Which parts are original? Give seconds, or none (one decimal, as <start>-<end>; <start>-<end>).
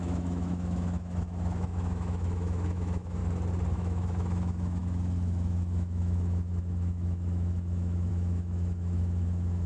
3.2-3.7